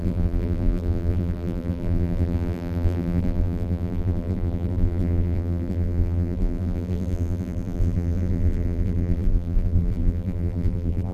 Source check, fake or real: fake